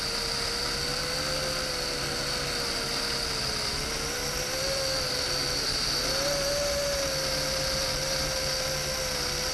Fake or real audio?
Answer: real